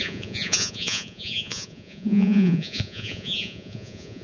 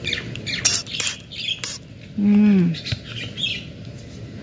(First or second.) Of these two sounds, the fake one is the first